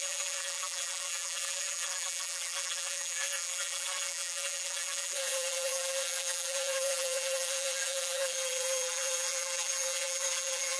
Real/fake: fake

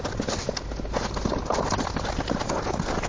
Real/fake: real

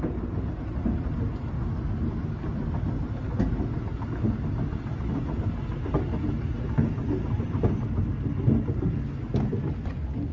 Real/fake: real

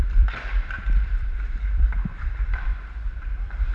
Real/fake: fake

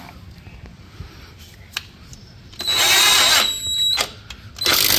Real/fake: real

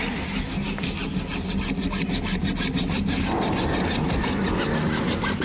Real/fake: real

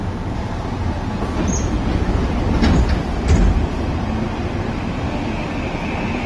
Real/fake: real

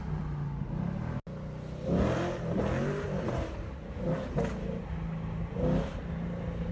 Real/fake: real